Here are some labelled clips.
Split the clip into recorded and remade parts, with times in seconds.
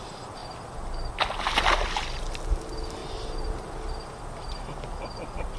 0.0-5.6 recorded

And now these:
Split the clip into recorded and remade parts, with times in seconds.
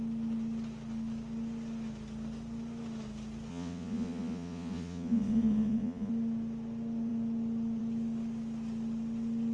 0.0-3.5 recorded; 3.5-6.1 remade; 6.1-9.5 recorded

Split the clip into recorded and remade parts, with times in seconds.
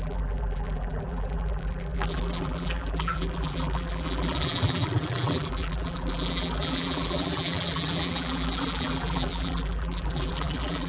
0.0-10.9 remade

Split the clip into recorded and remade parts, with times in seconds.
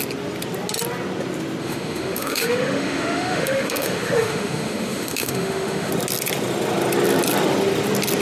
0.0-1.6 recorded; 1.6-5.9 remade; 5.9-8.2 recorded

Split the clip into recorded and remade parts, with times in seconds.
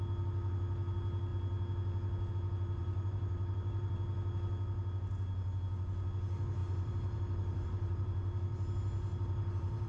0.0-2.8 recorded; 2.8-3.9 remade; 3.9-6.6 recorded; 6.6-9.9 remade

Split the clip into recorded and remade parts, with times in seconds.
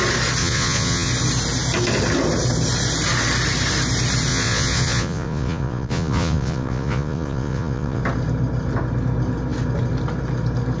0.0-0.4 recorded; 0.4-1.1 remade; 1.1-4.3 recorded; 4.3-8.0 remade; 8.0-10.8 recorded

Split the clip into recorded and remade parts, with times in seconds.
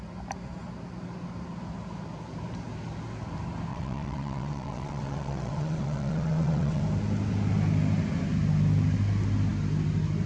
0.0-3.7 recorded; 3.7-6.8 remade; 6.8-10.3 recorded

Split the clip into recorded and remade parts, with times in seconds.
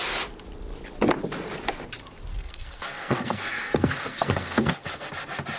0.0-2.3 recorded; 2.3-5.1 remade; 5.1-5.6 recorded